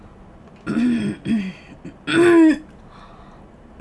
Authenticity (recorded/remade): recorded